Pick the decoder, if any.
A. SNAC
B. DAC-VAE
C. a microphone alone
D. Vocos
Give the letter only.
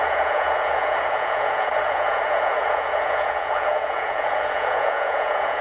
D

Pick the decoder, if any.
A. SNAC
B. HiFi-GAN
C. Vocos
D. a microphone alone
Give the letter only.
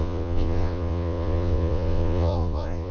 C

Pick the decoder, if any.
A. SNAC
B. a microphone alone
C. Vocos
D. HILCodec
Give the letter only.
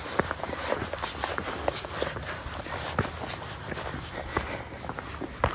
B